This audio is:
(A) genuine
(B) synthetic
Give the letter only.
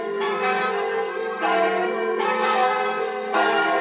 B